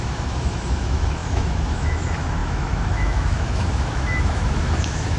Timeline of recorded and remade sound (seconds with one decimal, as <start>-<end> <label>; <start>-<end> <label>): 0.0-5.2 remade